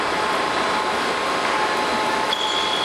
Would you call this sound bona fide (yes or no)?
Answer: yes